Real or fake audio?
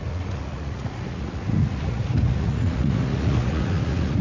fake